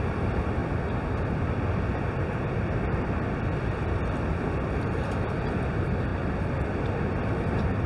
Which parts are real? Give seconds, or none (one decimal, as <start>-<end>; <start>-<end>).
0.0-7.9